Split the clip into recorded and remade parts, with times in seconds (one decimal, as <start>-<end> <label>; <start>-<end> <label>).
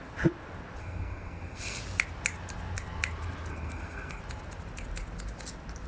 0.0-0.8 recorded; 0.8-1.8 remade; 1.8-3.5 recorded; 3.5-4.2 remade; 4.2-5.9 recorded